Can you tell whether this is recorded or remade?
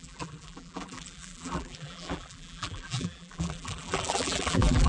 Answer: remade